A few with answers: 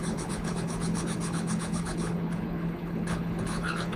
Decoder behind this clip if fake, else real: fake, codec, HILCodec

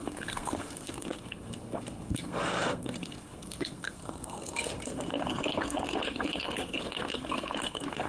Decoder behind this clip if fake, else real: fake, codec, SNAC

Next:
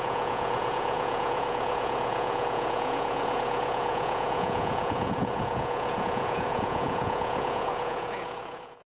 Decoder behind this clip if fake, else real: fake, vocoder, Vocos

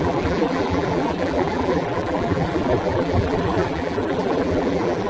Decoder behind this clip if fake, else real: fake, vocoder, BigVGAN v2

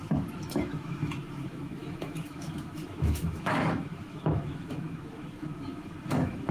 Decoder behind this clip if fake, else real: fake, autoencoder, DAC-VAE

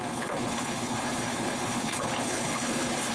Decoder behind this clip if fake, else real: fake, codec, HILCodec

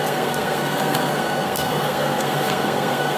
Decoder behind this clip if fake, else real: fake, codec, SNAC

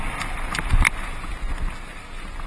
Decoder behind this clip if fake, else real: real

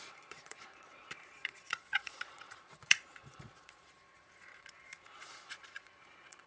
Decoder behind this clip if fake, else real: fake, vocoder, Vocos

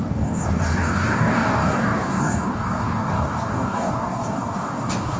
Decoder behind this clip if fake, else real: fake, codec, DAC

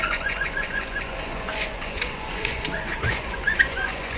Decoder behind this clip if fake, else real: fake, vocoder, Vocos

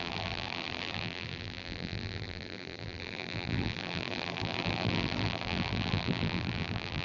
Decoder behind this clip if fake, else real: fake, vocoder, BigVGAN v2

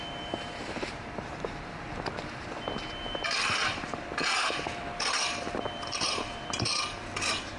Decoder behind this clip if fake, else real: fake, vocoder, BigVGAN v2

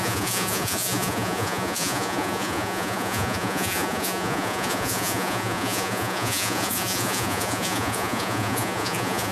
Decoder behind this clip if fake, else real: fake, vocoder, Vocos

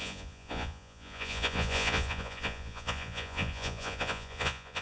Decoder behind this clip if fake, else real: fake, vocoder, Vocos